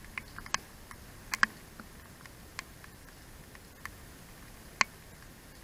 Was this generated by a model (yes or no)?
no